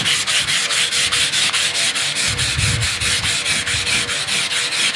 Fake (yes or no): no